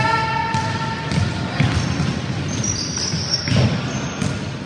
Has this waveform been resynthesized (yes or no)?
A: no